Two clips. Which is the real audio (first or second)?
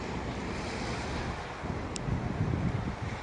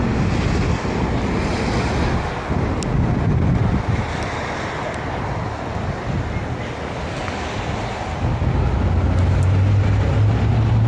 second